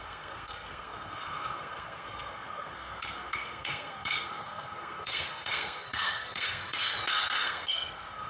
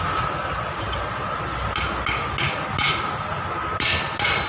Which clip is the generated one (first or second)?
first